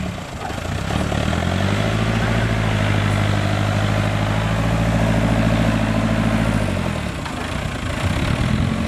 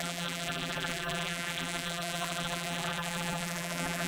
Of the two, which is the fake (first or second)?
second